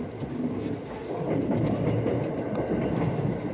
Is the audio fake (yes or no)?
no